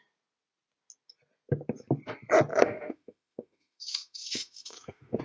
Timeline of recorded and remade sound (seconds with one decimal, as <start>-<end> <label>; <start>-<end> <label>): 0.0-2.5 recorded; 2.5-5.2 remade